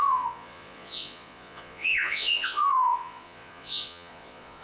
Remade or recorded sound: remade